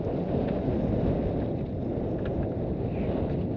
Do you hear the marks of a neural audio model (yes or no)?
no